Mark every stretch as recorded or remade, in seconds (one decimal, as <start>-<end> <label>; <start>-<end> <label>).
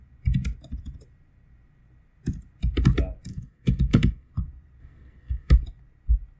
0.0-3.3 recorded; 3.3-4.3 remade; 4.3-4.8 recorded; 4.8-5.5 remade; 5.5-6.4 recorded